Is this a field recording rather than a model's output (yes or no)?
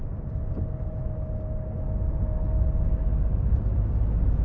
yes